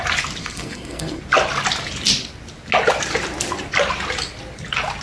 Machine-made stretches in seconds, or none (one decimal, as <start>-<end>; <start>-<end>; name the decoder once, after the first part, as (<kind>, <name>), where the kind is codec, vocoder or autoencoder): 0.4-1.2 (codec, SNAC)

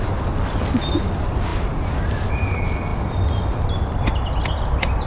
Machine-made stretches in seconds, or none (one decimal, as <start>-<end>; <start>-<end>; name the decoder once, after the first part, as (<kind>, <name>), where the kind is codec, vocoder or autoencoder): none

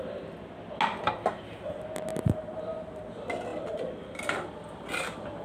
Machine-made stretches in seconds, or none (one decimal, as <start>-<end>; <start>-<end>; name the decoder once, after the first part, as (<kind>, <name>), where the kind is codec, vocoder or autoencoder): none

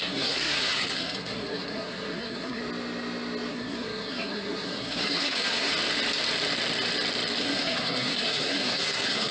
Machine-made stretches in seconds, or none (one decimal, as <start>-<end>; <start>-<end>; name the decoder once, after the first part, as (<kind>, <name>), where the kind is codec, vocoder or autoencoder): 0.0-2.6 (codec, SNAC); 3.5-5.7; 7.4-9.3

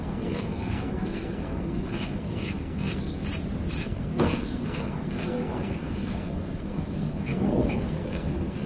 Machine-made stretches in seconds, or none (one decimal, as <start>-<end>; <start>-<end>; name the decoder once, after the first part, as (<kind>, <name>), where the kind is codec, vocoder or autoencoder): 0.0-3.2 (codec, SNAC); 3.8-8.7

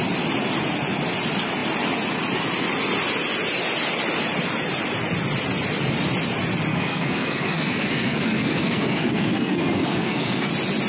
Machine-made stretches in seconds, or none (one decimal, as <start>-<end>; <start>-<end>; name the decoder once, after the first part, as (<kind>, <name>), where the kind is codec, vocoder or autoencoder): 6.7-10.5 (codec, SNAC)

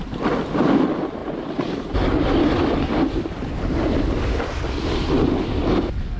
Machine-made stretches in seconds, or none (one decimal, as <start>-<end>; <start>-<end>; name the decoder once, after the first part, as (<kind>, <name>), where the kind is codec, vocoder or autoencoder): none

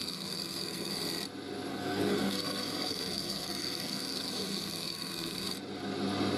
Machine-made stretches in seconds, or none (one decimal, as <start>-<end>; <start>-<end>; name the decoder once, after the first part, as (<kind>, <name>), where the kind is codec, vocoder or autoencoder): 0.0-0.9 (codec, SNAC); 1.7-5.5